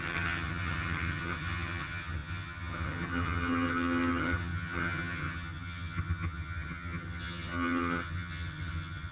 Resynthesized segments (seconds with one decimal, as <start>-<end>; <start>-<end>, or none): 0.0-9.1